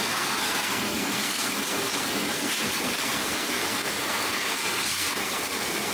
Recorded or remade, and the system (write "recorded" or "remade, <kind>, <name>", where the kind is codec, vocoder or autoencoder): remade, codec, SNAC